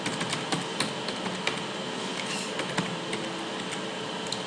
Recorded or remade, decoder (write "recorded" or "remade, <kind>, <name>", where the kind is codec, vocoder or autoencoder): recorded